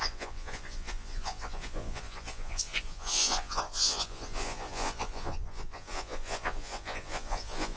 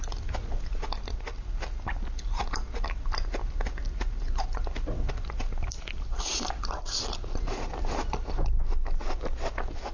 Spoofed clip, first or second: first